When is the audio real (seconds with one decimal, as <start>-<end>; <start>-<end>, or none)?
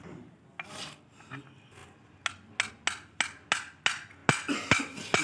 0.0-5.2